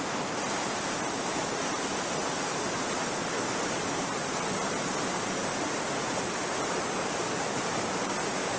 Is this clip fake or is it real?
real